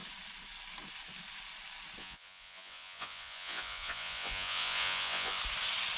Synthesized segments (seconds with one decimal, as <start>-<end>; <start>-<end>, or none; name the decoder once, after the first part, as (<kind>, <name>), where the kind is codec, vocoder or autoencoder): 2.0-5.4 (vocoder, Vocos)